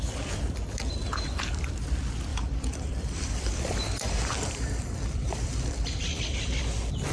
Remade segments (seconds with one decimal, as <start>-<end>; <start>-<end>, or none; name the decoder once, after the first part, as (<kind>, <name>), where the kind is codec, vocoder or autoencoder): 2.3-6.6 (vocoder, BigVGAN v2)